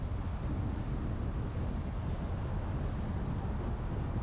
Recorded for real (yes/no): yes